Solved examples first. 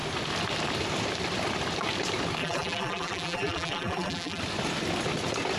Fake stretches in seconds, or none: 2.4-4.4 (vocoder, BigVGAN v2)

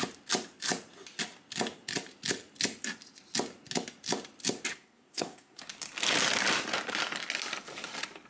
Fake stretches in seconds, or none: 4.7-5.6 (codec, SNAC)

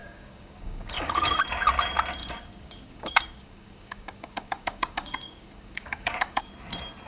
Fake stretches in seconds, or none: 0.0-1.4 (codec, DAC); 2.2-6.5